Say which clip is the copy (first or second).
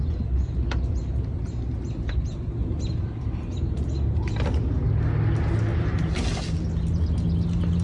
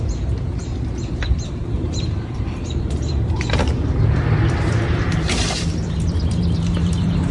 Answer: second